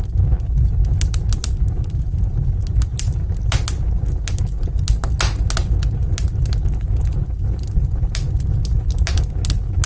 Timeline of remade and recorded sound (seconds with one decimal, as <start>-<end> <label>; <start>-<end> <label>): 0.0-9.9 recorded